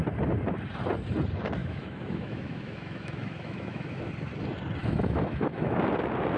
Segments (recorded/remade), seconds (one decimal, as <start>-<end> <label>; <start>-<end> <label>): 0.0-1.6 recorded; 1.6-4.1 remade; 4.1-4.8 recorded; 4.8-5.8 remade; 5.8-6.4 recorded